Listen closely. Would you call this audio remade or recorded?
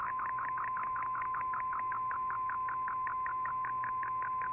remade